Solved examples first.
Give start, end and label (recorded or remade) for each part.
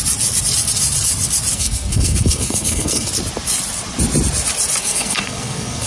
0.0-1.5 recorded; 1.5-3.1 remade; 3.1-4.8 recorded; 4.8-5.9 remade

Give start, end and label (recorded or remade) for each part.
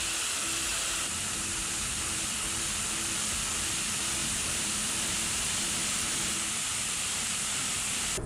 0.0-0.7 recorded; 0.7-2.3 remade; 2.3-4.2 recorded; 4.2-7.5 remade; 7.5-8.3 recorded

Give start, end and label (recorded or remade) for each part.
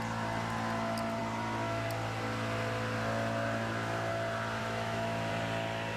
0.0-4.6 recorded; 4.6-5.3 remade; 5.3-6.0 recorded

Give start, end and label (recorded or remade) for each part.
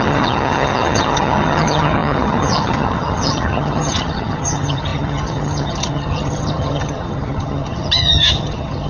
0.0-8.9 remade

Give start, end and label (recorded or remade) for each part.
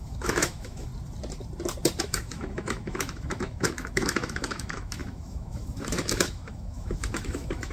0.0-0.9 remade; 0.9-2.0 recorded; 2.0-7.7 remade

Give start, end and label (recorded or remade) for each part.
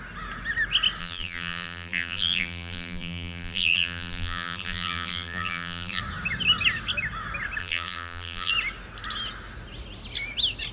0.0-1.0 recorded; 1.0-6.0 remade; 6.0-7.6 recorded; 7.6-8.5 remade; 8.5-10.7 recorded